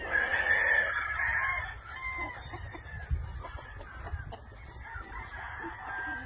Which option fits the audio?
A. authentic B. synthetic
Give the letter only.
A